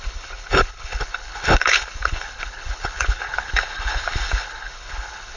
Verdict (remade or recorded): remade